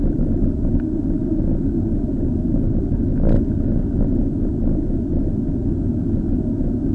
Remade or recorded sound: recorded